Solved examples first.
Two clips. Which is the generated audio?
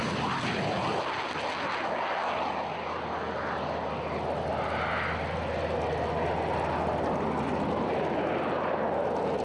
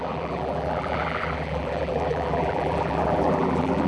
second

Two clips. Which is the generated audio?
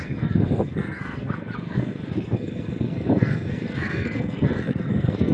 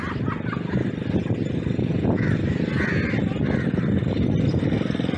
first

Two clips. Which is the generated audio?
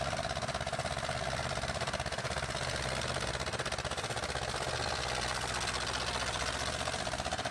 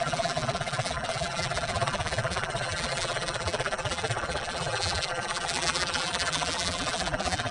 second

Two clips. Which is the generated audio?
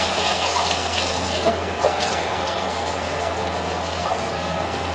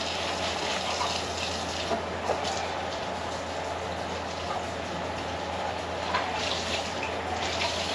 first